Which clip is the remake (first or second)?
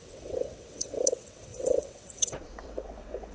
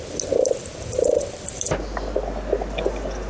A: first